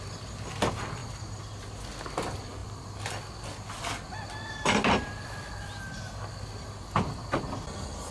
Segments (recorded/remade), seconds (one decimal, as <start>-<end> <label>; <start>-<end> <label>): 0.0-8.1 recorded